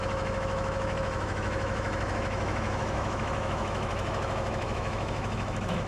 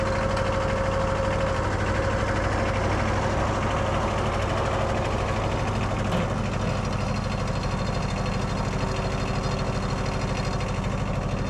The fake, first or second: first